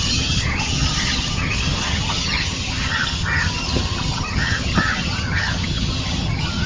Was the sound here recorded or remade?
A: remade